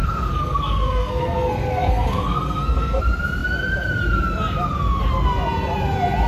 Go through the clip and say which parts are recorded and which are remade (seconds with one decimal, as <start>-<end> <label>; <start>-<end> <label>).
0.0-3.0 remade; 3.0-6.3 recorded